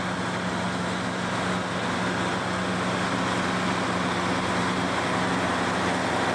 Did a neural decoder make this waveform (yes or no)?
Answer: no